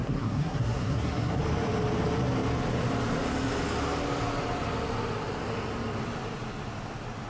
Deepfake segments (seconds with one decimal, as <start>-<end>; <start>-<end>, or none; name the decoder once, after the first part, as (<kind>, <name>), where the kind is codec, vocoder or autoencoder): 0.0-1.4 (codec, SNAC)